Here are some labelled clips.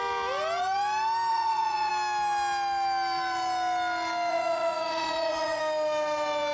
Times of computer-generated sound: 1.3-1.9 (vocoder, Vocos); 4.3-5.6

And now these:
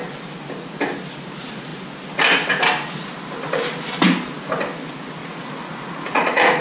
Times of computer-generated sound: 5.2-6.6 (vocoder, Vocos)

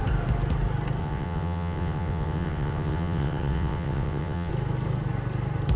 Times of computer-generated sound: 1.0-4.5 (vocoder, WaveNeXt)

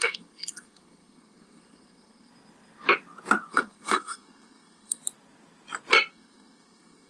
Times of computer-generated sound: 0.0-2.3 (codec, SNAC); 3.5-5.0; 6.1-7.1

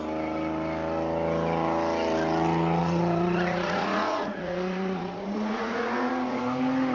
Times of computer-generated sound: 2.8-6.4 (vocoder, Vocos)

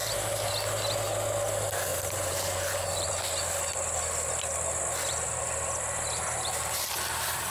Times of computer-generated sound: 1.9-3.1 (vocoder, BigVGAN v2)

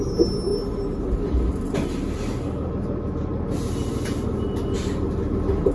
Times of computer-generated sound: none